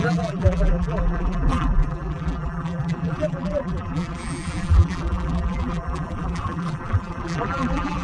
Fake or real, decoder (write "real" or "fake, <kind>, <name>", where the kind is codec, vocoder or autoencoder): fake, vocoder, BigVGAN v2